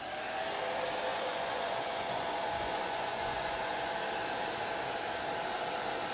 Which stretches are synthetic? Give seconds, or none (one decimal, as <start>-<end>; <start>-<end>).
1.1-3.9